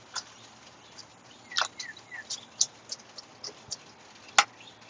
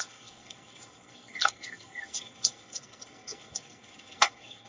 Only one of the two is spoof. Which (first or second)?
second